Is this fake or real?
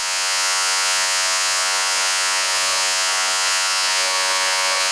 fake